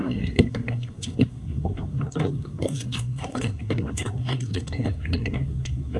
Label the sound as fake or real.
fake